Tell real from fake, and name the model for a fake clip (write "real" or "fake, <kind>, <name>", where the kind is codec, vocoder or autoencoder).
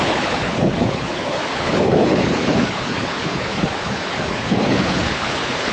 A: fake, codec, HILCodec